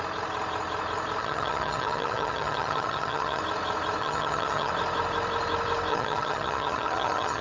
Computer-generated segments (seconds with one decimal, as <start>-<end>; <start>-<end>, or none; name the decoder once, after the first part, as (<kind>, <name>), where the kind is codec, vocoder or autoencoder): 1.2-3.4 (vocoder, HiFi-GAN); 4.0-4.7; 5.9-7.4